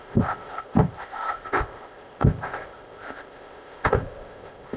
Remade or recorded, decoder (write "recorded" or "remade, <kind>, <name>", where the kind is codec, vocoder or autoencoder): remade, codec, ZipCodec